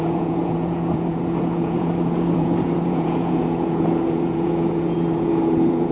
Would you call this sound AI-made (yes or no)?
yes